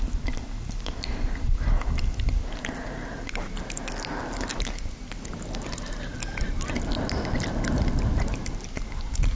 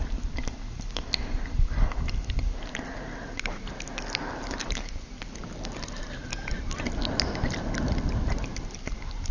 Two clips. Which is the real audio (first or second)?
first